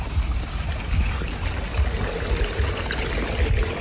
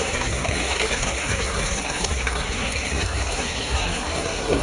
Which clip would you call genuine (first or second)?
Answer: first